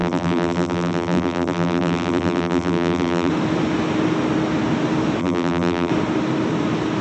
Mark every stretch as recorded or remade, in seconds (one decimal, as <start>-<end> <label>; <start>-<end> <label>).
0.0-3.3 remade; 3.3-5.2 recorded; 5.2-5.9 remade; 5.9-7.0 recorded

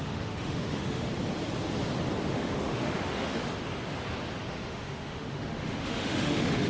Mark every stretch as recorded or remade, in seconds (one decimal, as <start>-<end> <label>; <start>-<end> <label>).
0.0-1.1 remade; 1.1-2.3 recorded; 2.3-3.4 remade; 3.4-4.5 recorded; 4.5-6.7 remade

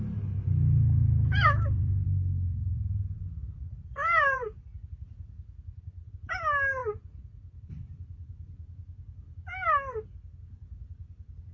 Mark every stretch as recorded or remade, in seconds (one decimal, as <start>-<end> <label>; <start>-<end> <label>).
0.0-1.0 recorded; 1.0-6.1 remade; 6.1-6.8 recorded; 6.8-7.7 remade; 7.7-11.5 recorded

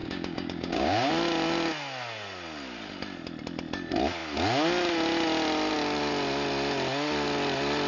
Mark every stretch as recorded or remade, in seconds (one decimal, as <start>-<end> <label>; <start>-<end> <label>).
0.0-1.1 remade; 1.1-7.9 recorded

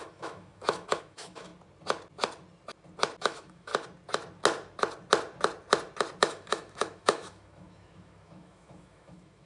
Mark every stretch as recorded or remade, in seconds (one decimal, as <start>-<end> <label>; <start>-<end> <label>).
0.0-1.5 remade; 1.5-3.2 recorded; 3.2-3.7 remade; 3.7-6.2 recorded; 6.2-9.5 remade

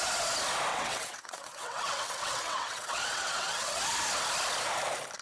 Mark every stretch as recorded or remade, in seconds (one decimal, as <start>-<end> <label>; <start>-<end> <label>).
0.0-0.7 recorded; 0.7-3.8 remade; 3.8-5.2 recorded